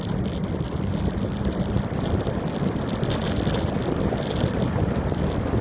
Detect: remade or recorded recorded